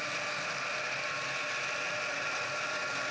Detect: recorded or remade recorded